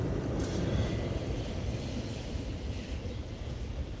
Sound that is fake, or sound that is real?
real